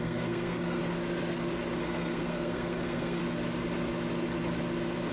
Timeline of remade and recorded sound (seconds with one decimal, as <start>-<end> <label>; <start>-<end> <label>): 0.0-0.8 remade; 0.8-1.8 recorded; 1.8-3.2 remade; 3.2-5.1 recorded